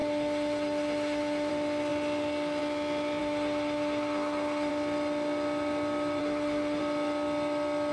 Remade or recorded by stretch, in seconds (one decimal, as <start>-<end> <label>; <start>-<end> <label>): 0.0-1.5 remade; 1.5-3.2 recorded; 3.2-4.7 remade; 4.7-6.2 recorded; 6.2-6.8 remade; 6.8-7.9 recorded